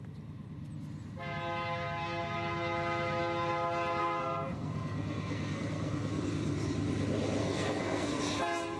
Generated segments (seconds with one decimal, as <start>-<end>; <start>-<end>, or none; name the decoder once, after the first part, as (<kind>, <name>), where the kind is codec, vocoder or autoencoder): 4.0-6.2 (codec, SNAC); 7.4-8.2